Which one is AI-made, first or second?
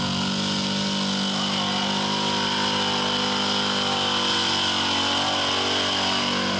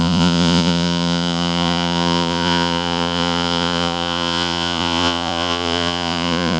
second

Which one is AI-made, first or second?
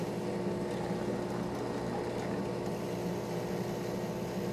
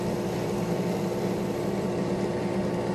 second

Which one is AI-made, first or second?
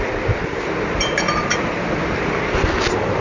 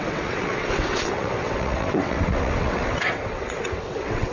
second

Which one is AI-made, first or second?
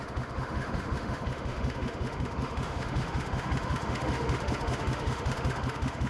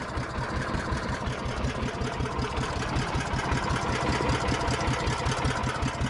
first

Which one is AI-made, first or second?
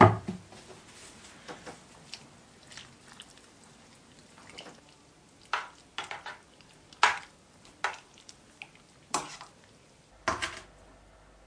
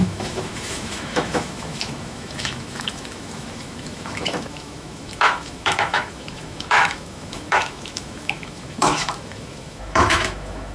second